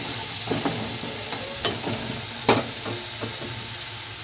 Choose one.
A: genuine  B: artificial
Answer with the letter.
A